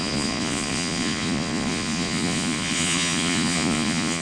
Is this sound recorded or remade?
remade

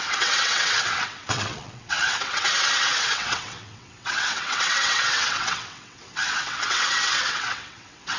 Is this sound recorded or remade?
remade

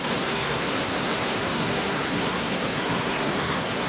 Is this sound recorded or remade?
remade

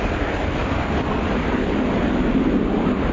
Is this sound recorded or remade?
recorded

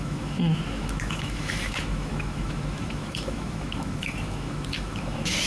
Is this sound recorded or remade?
remade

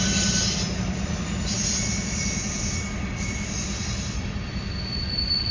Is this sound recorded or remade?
recorded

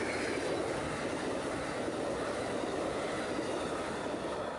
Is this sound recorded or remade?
recorded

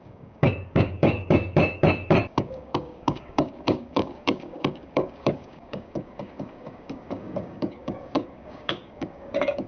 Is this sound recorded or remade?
remade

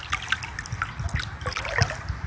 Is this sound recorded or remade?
recorded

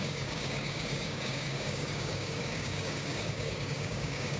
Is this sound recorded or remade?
remade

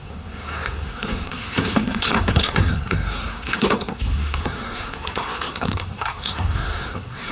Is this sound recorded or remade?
remade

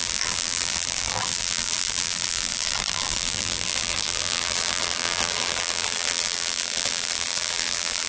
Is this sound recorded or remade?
remade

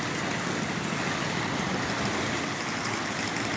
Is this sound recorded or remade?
recorded